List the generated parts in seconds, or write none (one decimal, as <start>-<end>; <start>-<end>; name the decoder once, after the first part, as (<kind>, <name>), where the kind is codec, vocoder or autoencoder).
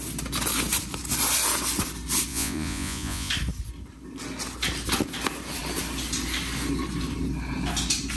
2.3-3.3 (vocoder, Vocos)